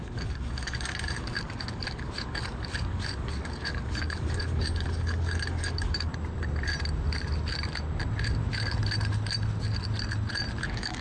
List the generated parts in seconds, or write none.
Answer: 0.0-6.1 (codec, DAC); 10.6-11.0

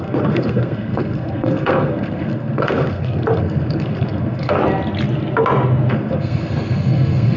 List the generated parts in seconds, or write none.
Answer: 0.0-4.6 (codec, SNAC); 5.9-7.4

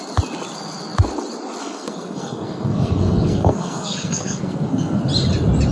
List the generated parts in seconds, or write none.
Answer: 1.6-5.0 (codec, SNAC)

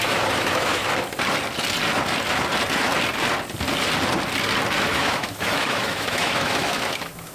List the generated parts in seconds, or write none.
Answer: 0.0-0.8 (autoencoder, DAC-VAE); 4.9-7.3

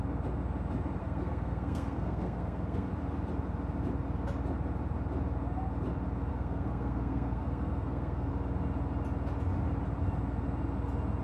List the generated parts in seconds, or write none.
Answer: 1.0-2.9 (codec, SNAC); 6.3-8.3

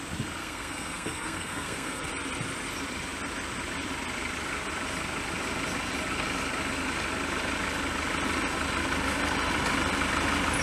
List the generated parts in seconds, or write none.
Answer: 0.4-2.1 (codec, SNAC)